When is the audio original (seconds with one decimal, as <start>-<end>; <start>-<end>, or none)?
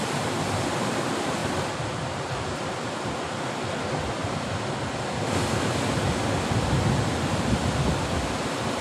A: 0.0-8.8